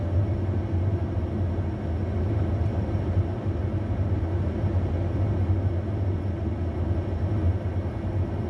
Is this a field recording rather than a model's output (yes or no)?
yes